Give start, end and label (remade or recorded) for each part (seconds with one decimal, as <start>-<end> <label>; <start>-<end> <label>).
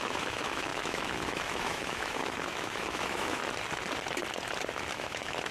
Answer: 0.0-3.4 remade; 3.4-4.9 recorded; 4.9-5.5 remade